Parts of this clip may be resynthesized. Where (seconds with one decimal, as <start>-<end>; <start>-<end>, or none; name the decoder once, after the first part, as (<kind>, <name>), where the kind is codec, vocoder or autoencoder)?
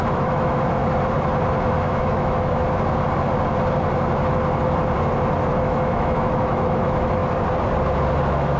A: 0.0-0.8 (autoencoder, DAC-VAE); 1.6-2.6; 5.6-7.2; 8.2-8.6